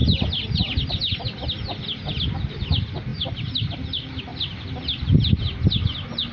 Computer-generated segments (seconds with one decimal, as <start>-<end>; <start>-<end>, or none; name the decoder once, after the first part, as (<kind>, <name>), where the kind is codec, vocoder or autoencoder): none